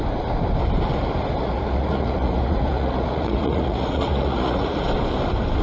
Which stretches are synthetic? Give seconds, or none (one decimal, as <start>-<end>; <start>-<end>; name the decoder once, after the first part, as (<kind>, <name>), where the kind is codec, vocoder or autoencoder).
1.4-4.8 (vocoder, Vocos)